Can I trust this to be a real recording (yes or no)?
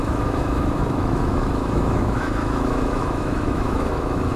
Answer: no